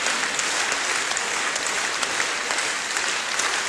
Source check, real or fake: real